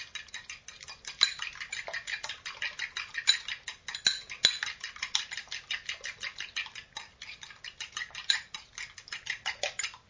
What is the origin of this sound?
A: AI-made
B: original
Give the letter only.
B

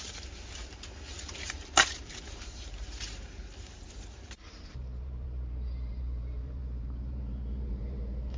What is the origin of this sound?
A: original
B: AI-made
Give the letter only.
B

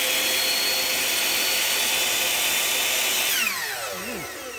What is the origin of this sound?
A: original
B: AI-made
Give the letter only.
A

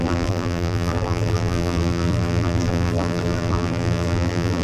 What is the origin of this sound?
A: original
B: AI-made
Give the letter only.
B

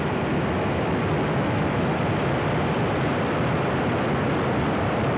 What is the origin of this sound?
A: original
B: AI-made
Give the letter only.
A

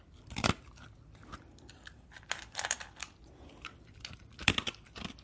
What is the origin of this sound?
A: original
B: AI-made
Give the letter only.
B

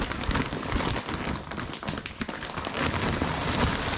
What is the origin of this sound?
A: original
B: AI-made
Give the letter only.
A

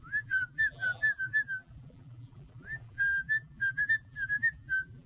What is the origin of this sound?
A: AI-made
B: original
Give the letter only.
A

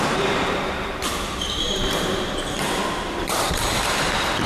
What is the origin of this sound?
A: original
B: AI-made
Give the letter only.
B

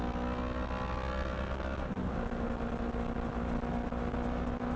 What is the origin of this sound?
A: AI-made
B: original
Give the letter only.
B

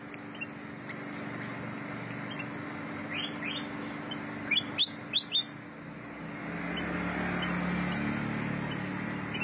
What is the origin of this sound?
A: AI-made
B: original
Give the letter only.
B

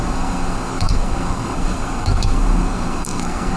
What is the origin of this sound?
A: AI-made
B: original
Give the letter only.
A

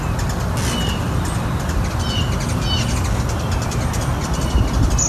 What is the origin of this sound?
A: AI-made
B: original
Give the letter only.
B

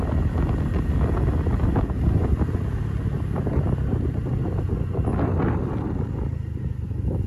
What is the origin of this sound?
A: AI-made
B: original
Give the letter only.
B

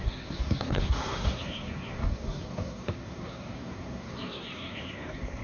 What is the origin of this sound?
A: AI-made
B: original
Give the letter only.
A